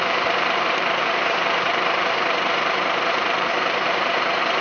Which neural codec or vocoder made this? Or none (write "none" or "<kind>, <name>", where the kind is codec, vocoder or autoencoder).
vocoder, BigVGAN v2